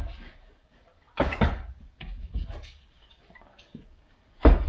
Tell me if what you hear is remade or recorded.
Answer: remade